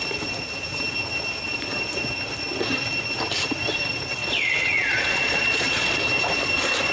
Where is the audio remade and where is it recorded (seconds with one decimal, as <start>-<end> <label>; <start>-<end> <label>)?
0.0-4.2 recorded; 4.2-6.0 remade; 6.0-6.9 recorded